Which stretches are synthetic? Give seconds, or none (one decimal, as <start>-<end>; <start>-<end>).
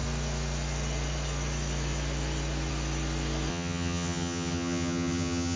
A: 3.5-5.6